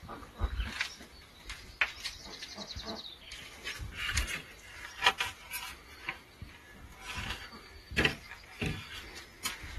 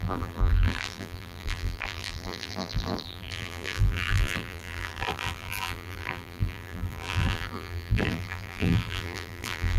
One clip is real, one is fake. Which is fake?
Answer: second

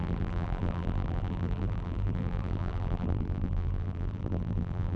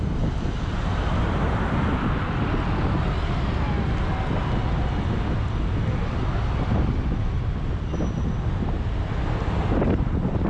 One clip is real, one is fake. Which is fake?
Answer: first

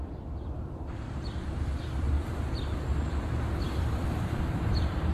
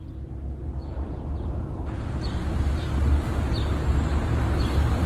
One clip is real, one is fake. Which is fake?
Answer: first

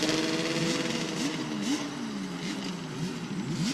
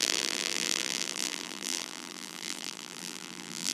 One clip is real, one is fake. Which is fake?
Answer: second